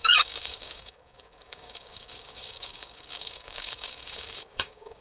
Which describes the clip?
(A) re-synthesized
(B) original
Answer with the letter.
A